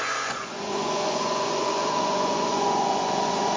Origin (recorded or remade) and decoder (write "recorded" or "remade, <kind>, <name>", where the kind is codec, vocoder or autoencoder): remade, vocoder, Vocos